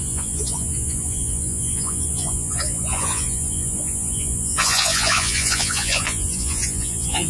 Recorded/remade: remade